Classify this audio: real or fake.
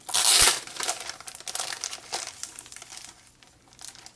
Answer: real